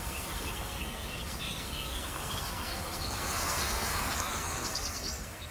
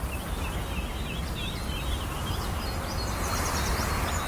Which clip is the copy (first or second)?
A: first